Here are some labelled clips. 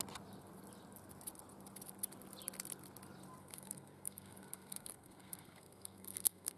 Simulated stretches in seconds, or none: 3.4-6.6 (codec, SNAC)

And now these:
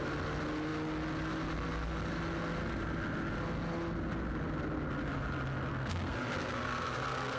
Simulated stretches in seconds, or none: 5.7-7.4 (codec, SNAC)

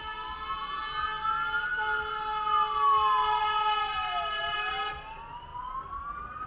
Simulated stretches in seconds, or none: none

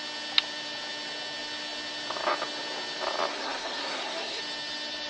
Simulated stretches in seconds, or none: 3.3-4.4 (codec, SNAC)

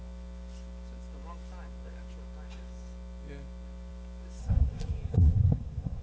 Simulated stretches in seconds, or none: 4.4-6.0 (codec, SNAC)

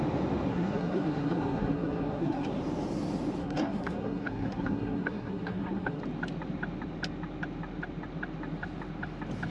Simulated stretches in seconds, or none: 0.5-2.5 (codec, SNAC); 3.4-6.0